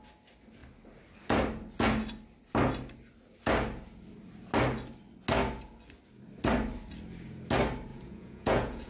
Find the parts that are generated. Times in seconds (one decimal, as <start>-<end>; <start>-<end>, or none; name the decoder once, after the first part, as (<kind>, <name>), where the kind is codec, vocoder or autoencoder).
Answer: 7.9-8.9 (vocoder, Vocos)